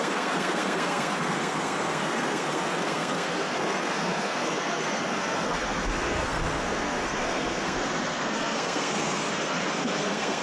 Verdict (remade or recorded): remade